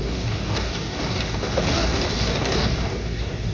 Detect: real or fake fake